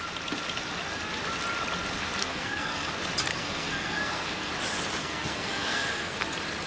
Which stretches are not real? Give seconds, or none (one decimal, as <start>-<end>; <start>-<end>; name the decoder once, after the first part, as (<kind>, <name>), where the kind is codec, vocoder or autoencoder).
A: 2.2-2.9 (codec, SNAC); 3.3-4.5; 5.0-6.2

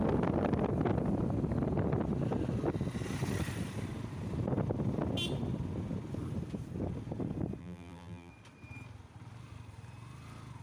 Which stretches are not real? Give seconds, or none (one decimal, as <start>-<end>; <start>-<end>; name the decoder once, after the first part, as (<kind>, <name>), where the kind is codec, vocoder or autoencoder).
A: 7.6-8.3 (vocoder, BigVGAN v2)

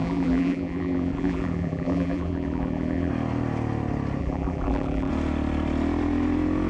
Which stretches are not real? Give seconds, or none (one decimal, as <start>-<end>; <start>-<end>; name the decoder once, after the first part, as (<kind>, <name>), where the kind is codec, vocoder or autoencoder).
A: 0.0-3.1 (vocoder, BigVGAN v2); 4.2-5.1